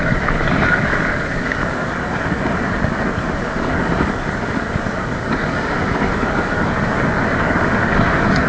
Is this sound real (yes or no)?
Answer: no